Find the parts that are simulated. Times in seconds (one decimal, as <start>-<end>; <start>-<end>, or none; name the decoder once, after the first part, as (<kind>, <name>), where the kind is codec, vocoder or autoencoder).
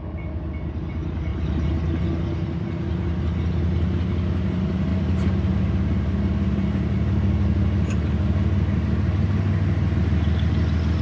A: 4.9-5.6 (vocoder, BigVGAN v2)